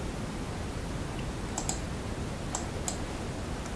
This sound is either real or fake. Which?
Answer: real